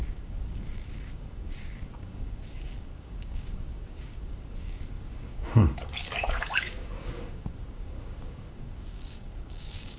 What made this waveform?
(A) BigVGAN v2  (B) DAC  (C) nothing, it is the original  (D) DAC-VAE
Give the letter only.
B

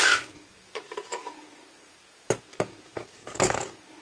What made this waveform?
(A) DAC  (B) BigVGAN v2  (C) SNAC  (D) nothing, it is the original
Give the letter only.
A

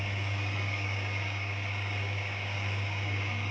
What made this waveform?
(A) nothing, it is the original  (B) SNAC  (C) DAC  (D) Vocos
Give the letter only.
C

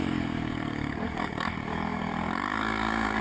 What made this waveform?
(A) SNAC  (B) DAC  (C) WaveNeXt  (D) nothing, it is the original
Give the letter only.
B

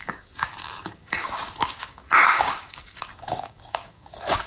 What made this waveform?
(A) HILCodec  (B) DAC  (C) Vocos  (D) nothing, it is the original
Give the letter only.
B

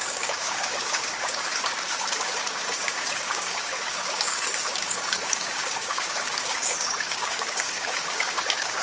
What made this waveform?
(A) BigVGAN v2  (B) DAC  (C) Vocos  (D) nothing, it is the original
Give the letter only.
B